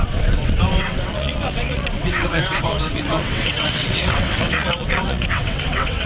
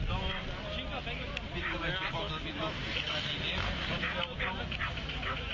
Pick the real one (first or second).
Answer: second